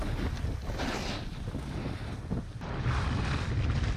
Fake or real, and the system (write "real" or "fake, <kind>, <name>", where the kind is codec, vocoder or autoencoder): real